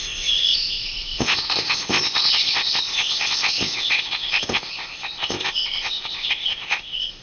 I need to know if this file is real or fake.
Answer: fake